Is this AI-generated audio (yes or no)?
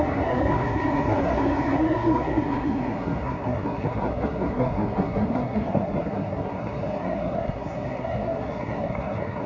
yes